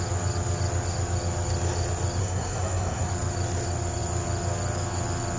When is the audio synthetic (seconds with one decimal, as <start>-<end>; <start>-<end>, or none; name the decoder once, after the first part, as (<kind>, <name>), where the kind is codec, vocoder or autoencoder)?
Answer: 2.2-3.1 (codec, SNAC)